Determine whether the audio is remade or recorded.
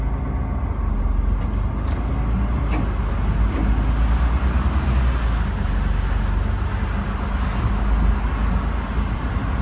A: recorded